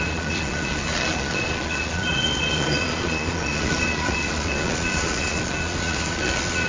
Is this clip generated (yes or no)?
yes